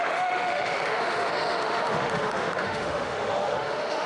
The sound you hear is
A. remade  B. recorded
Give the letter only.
A